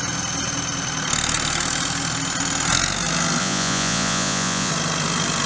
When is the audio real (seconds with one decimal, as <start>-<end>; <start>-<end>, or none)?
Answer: 0.0-3.4; 4.7-5.5